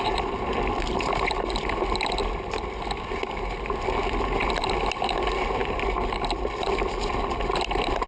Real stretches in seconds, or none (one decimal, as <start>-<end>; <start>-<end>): 0.0-5.6